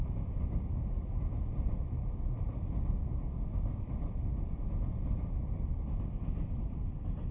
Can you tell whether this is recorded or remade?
remade